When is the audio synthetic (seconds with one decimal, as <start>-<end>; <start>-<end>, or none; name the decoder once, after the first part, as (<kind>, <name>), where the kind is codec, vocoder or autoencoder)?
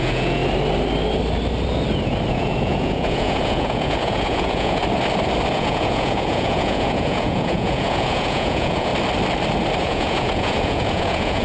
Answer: 0.0-0.4 (vocoder, Vocos); 2.3-4.8; 5.5-8.9; 9.8-11.4